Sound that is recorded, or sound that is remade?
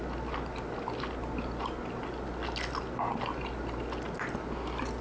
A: recorded